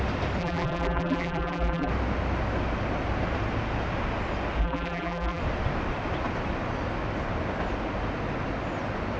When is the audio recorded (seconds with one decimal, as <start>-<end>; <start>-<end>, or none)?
0.0-0.4; 1.9-4.6; 5.4-9.2